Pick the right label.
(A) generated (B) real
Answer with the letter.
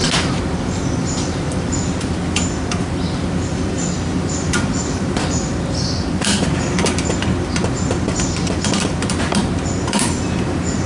A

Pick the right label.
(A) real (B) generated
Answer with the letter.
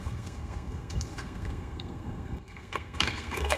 B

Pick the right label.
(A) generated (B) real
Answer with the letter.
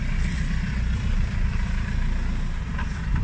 B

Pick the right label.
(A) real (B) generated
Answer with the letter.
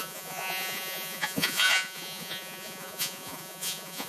B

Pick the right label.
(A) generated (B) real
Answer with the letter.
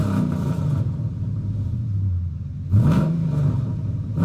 A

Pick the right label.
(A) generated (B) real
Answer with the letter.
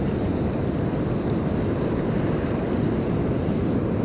B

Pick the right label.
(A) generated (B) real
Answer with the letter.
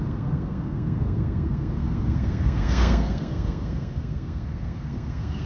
A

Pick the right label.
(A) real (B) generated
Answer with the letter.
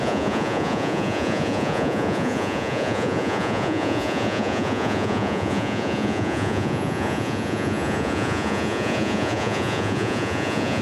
B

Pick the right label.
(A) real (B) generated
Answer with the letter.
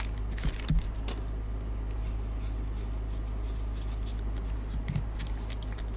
A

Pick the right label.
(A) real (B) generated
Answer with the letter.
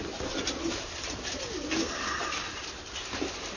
A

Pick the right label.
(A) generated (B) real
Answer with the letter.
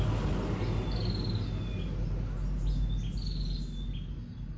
B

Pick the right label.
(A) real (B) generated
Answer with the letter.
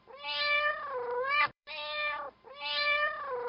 B